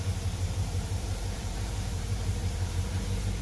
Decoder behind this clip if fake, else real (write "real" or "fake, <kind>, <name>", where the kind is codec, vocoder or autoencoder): fake, vocoder, BigVGAN v2